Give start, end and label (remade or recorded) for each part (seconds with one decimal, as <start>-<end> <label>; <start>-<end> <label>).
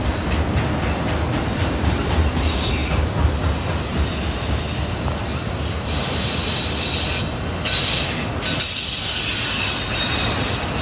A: 0.0-10.8 recorded